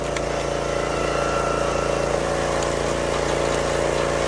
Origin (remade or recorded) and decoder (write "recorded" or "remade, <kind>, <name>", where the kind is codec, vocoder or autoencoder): recorded